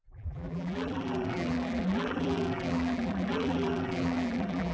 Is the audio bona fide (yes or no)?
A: no